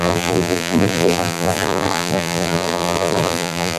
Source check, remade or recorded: remade